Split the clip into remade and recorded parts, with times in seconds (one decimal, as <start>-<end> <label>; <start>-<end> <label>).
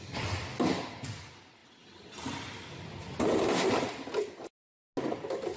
0.0-5.6 recorded